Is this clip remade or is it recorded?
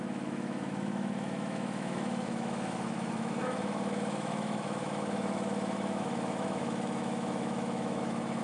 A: remade